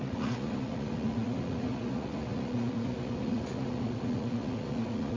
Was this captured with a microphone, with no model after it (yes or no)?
no